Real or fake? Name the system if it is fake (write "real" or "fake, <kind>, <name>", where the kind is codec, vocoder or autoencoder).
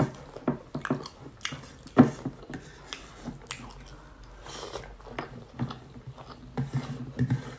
real